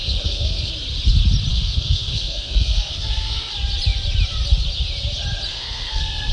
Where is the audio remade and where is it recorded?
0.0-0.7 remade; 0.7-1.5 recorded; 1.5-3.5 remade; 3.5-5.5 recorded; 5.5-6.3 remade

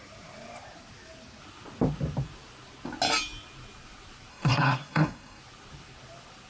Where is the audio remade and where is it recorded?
0.0-4.3 recorded; 4.3-5.4 remade; 5.4-6.5 recorded

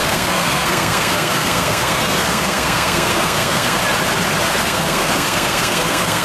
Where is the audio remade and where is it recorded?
0.0-3.8 remade; 3.8-4.4 recorded; 4.4-6.2 remade

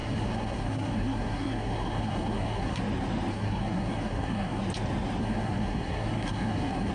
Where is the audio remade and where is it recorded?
0.0-2.8 remade; 2.8-3.3 recorded; 3.3-4.6 remade; 4.6-5.2 recorded; 5.2-6.9 remade

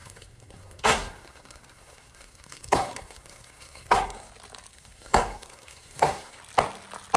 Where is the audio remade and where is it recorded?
0.0-4.3 remade; 4.3-4.7 recorded; 4.7-6.4 remade; 6.4-7.2 recorded

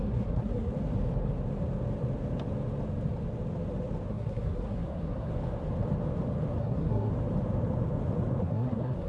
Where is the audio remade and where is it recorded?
0.0-0.7 remade; 0.7-4.1 recorded; 4.1-5.3 remade; 5.3-6.6 recorded; 6.6-7.1 remade; 7.1-8.4 recorded; 8.4-9.1 remade

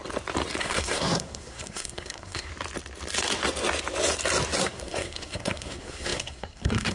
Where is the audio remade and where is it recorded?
0.0-0.6 recorded; 0.6-2.5 remade; 2.5-4.6 recorded; 4.6-6.9 remade